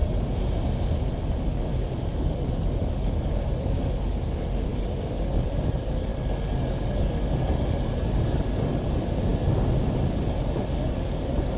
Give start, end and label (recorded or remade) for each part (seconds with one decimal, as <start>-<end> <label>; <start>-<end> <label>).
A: 0.0-1.2 recorded; 1.2-1.7 remade; 1.7-2.2 recorded; 2.2-9.3 remade; 9.3-10.1 recorded; 10.1-11.6 remade